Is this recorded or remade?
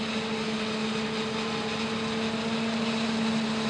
recorded